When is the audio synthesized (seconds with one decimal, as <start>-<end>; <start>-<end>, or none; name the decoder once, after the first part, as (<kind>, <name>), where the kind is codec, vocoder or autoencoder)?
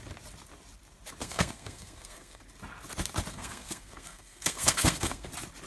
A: 1.2-2.4 (codec, SNAC); 3.3-5.3